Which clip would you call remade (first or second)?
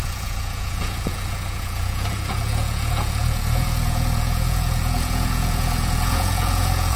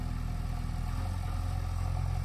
first